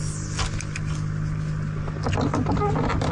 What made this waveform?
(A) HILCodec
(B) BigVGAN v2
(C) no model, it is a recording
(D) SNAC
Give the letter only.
C